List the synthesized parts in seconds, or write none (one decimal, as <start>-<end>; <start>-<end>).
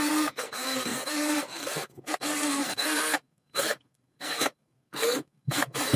0.0-6.0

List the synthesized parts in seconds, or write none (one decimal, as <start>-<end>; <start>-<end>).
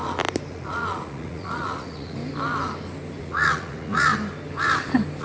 0.5-2.2; 3.2-4.1